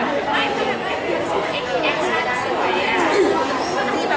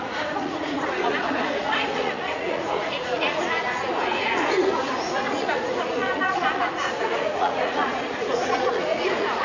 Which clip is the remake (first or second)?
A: second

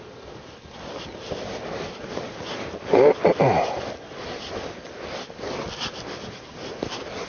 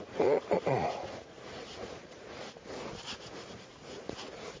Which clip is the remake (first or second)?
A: second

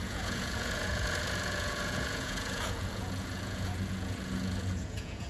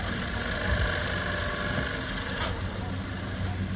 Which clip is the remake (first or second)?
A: first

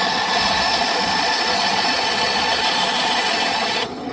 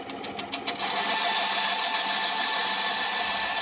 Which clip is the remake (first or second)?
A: first